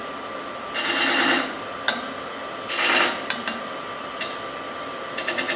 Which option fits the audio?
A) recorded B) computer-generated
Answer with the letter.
A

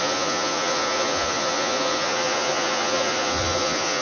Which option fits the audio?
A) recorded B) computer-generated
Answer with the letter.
B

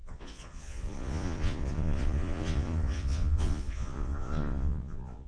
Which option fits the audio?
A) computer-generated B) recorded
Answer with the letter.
A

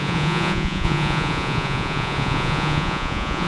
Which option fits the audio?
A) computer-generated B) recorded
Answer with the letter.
A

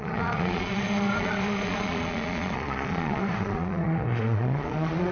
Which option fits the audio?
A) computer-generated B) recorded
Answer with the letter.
A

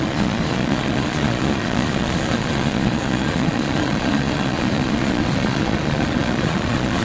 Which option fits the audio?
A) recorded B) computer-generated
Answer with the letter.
B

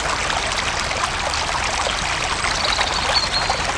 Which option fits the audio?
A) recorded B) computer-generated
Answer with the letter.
A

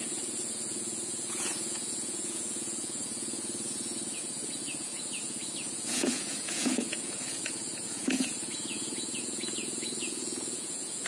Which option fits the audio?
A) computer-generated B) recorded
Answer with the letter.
A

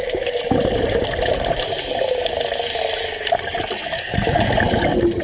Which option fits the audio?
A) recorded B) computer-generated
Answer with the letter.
A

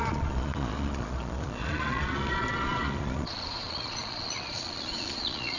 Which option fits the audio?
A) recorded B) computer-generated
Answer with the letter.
B